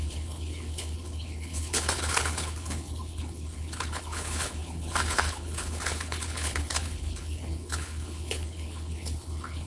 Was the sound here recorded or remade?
remade